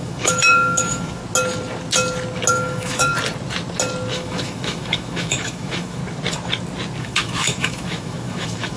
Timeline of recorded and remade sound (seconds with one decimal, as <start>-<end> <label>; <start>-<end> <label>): 0.0-1.2 remade; 1.2-2.5 recorded; 2.5-3.1 remade; 3.1-4.1 recorded; 4.1-6.0 remade; 6.0-7.0 recorded; 7.0-8.8 remade